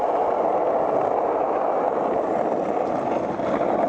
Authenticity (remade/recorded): recorded